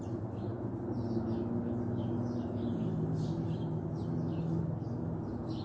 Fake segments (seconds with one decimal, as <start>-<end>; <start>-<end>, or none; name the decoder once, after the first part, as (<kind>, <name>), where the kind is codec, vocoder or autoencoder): none